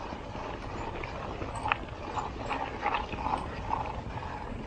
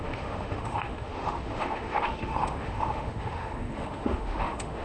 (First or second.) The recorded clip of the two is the first